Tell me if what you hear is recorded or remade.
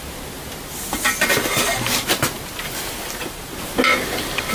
remade